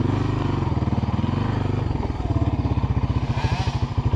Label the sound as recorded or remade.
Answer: recorded